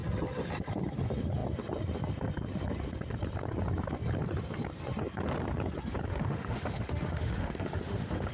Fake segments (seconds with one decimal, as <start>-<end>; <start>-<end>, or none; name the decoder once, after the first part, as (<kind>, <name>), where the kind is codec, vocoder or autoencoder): 6.1-8.3 (autoencoder, DAC-VAE)